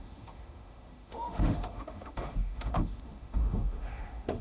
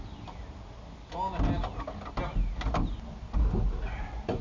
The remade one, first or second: first